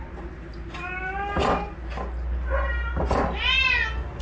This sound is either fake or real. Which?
real